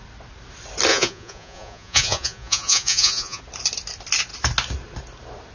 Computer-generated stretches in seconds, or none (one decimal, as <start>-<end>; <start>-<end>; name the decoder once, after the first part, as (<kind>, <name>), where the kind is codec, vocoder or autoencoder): 0.9-3.4 (vocoder, Vocos)